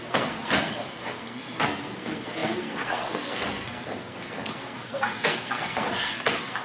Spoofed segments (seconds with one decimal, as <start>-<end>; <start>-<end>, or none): 0.0-6.6

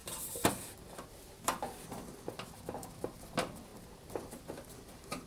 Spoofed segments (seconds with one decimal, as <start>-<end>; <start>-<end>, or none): none